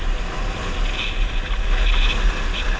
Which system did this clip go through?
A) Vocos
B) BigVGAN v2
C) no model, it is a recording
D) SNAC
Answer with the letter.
C